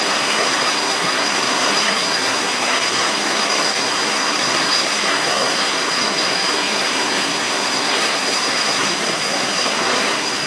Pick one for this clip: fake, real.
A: fake